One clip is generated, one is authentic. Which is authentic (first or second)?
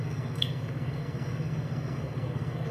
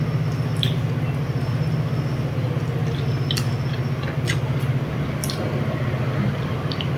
second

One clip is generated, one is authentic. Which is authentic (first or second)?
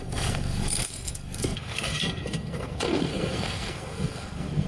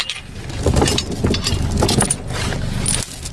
second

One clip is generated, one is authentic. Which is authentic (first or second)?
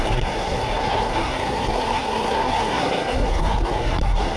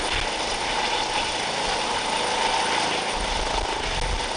second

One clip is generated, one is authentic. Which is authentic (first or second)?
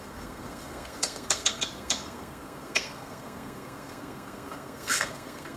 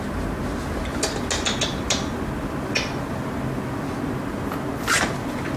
second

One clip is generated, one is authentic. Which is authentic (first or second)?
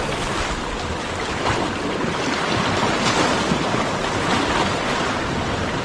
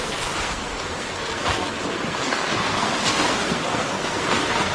first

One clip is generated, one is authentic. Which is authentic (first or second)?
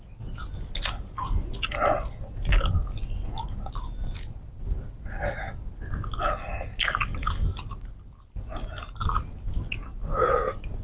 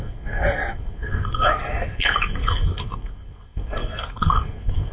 first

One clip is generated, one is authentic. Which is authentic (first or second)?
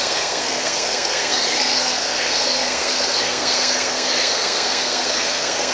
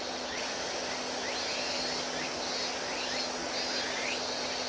second